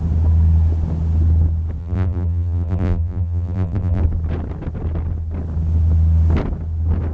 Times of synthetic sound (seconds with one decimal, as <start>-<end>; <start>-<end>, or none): 1.8-4.0